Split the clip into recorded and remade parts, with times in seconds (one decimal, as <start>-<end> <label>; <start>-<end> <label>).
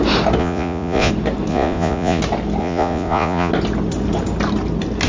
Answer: 0.0-0.4 recorded; 0.4-1.1 remade; 1.1-1.5 recorded; 1.5-2.2 remade; 2.2-2.6 recorded; 2.6-3.5 remade; 3.5-5.1 recorded